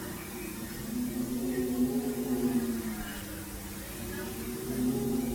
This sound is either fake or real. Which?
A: real